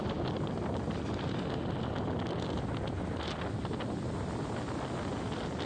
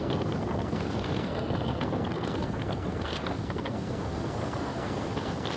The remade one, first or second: second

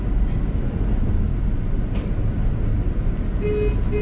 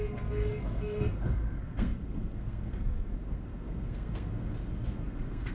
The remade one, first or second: second